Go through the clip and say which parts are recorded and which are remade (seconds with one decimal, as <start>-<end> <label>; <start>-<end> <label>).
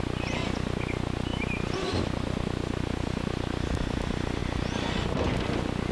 0.0-5.9 recorded